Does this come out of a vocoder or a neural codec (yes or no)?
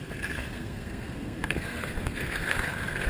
yes